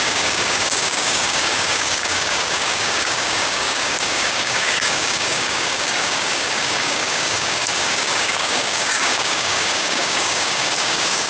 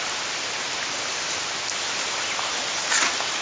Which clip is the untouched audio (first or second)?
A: second